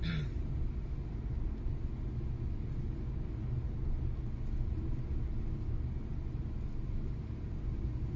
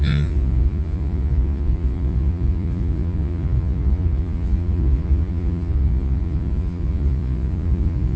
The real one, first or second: first